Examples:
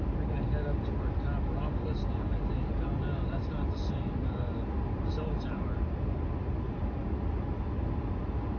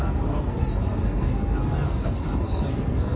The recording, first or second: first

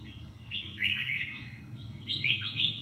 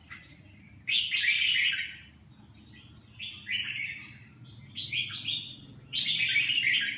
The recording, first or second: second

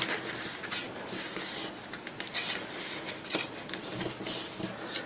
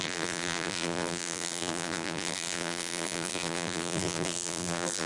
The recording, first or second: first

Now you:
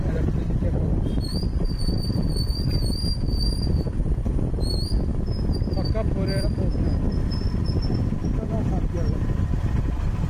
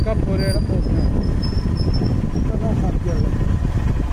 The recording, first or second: second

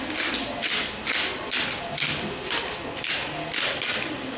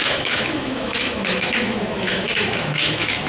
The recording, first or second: first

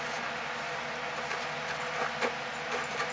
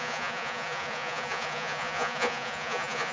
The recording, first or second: first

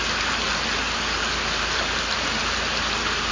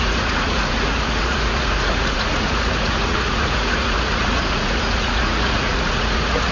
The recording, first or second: first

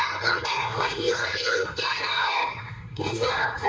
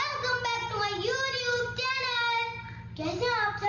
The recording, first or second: second